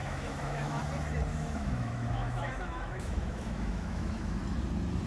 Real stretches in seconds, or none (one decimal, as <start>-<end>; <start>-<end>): 0.8-1.3; 4.4-5.1